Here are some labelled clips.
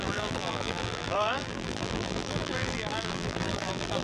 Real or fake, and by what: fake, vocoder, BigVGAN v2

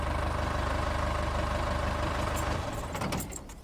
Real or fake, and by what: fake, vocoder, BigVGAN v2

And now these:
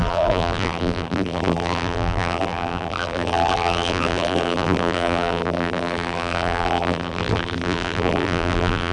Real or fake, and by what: fake, vocoder, BigVGAN v2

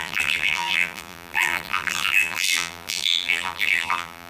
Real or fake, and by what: fake, vocoder, BigVGAN v2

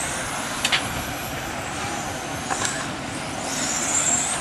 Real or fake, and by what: real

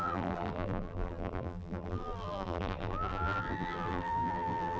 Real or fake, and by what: fake, vocoder, BigVGAN v2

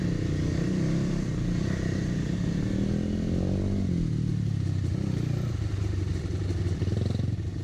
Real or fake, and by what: real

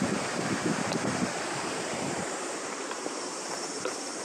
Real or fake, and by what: fake, vocoder, BigVGAN v2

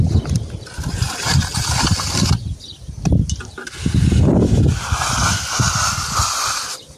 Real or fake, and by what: real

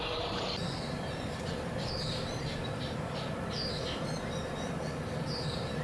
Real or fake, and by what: fake, vocoder, BigVGAN v2